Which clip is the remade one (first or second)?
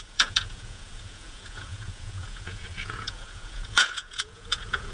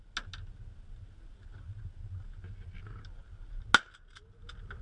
first